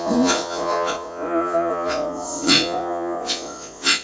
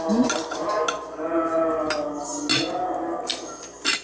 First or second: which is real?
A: second